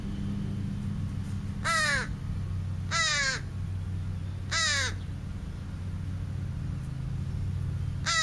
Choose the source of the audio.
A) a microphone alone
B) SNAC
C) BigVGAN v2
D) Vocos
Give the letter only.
A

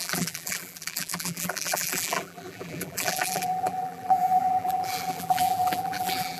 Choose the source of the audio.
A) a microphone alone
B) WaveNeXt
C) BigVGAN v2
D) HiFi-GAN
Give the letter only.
C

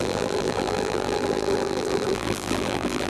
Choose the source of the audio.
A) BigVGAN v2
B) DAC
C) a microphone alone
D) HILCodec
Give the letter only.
A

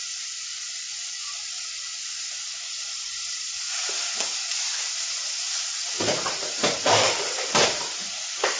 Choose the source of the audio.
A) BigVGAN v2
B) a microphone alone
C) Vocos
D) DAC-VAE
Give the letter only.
A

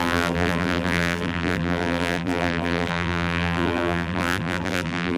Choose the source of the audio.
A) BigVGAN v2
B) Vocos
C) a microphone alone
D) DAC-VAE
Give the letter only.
A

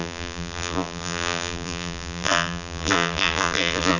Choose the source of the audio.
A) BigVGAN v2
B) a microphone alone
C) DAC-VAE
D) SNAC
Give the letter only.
A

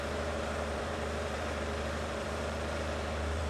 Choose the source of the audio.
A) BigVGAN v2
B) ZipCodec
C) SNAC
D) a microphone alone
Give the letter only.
A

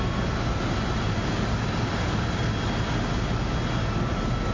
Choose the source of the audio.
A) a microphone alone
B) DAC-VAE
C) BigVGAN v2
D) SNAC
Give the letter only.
A